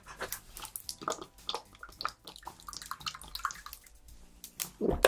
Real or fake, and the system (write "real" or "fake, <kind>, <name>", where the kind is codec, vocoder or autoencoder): real